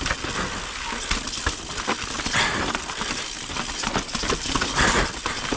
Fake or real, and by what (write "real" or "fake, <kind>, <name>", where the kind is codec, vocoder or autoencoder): real